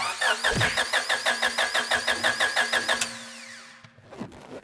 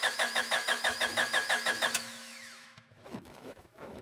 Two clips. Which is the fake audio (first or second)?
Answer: second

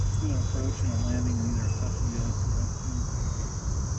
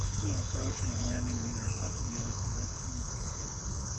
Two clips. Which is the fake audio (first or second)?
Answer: second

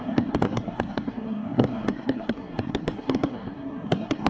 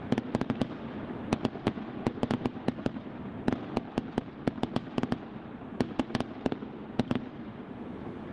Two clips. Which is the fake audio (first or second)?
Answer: first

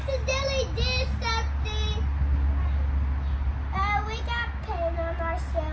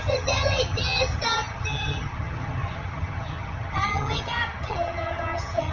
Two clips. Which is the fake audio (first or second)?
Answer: second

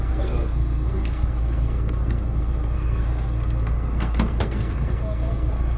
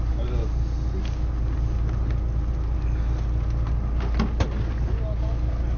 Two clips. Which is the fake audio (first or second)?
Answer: first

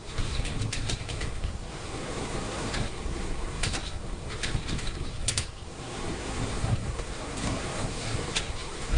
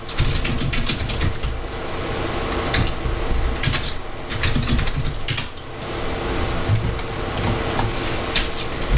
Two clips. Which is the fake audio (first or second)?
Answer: first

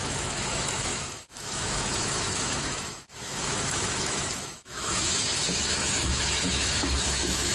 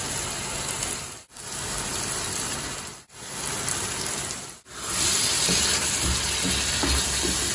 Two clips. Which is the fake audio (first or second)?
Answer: first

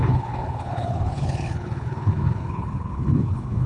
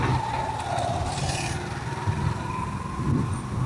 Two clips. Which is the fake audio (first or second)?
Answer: first